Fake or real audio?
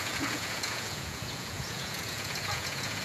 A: fake